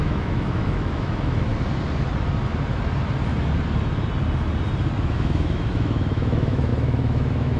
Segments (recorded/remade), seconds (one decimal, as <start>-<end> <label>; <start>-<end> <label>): 0.0-1.5 remade; 1.5-5.0 recorded; 5.0-7.6 remade